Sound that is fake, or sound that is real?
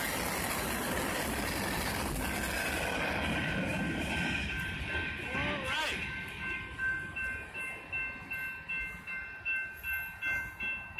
real